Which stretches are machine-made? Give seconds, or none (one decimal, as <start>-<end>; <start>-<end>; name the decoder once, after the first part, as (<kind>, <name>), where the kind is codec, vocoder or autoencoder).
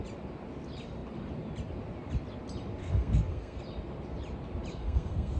2.8-3.6 (codec, SNAC); 4.7-5.4